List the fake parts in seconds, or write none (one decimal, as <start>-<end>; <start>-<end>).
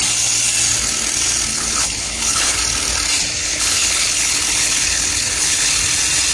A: 1.5-2.6; 3.4-5.7